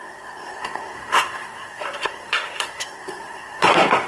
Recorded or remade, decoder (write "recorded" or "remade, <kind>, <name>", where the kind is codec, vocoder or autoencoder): remade, codec, SNAC